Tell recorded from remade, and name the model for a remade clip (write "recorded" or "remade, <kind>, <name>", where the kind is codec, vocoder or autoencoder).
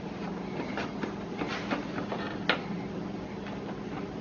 recorded